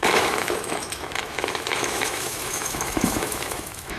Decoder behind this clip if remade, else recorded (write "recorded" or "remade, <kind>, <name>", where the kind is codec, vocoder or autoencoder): remade, autoencoder, DAC-VAE